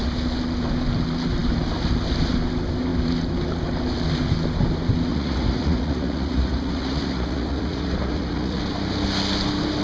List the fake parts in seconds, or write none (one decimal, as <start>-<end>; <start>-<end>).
5.1-8.6

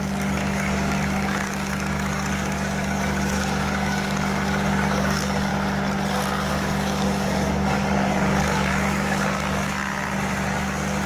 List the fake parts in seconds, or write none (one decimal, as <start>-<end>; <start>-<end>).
0.0-5.5; 6.5-9.9

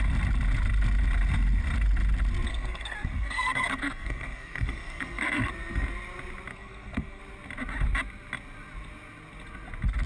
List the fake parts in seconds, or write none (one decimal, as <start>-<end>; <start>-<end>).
2.5-5.5; 6.5-7.2

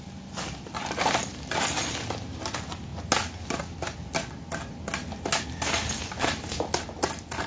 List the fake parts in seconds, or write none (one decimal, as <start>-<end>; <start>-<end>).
none